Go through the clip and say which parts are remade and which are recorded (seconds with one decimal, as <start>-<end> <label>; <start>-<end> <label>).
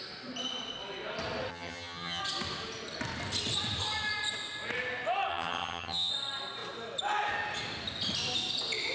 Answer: 0.0-1.5 recorded; 1.5-2.2 remade; 2.2-5.3 recorded; 5.3-6.1 remade; 6.1-8.9 recorded